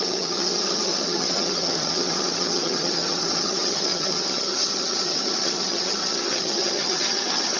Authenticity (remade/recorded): remade